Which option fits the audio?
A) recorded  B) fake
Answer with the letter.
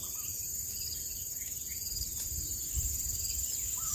B